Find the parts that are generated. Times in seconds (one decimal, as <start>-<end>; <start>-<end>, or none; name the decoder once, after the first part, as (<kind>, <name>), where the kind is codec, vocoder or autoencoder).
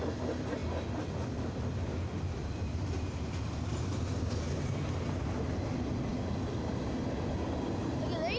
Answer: none